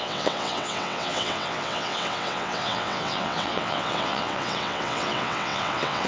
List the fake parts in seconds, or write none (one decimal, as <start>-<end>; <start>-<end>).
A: 0.0-6.1